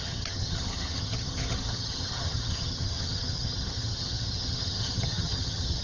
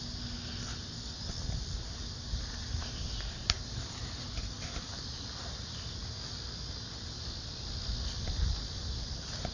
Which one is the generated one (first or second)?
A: first